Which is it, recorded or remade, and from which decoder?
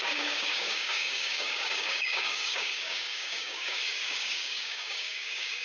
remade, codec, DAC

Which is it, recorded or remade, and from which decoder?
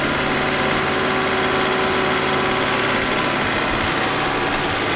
recorded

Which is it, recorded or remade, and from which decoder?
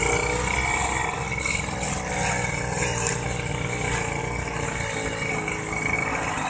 recorded